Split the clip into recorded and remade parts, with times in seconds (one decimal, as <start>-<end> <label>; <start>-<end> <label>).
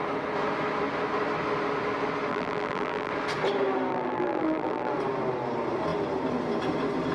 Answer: 0.0-2.3 recorded; 2.3-3.1 remade; 3.1-3.9 recorded; 3.9-4.9 remade; 4.9-7.1 recorded